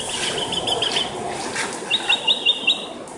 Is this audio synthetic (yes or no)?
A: no